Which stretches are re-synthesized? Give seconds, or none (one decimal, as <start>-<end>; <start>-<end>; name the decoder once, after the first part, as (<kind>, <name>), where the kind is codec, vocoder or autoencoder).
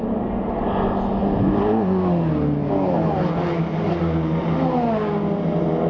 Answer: none